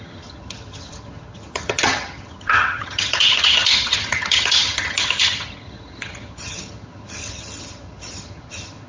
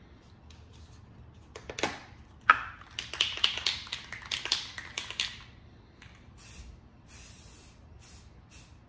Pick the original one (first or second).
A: second